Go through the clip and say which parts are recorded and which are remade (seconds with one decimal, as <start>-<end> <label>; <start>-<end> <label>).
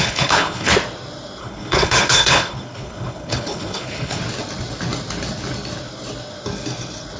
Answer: 0.0-0.7 remade; 0.7-1.4 recorded; 1.4-4.2 remade; 4.2-7.2 recorded